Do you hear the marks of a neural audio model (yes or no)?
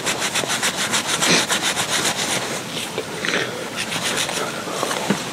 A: no